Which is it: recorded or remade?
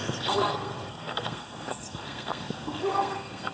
remade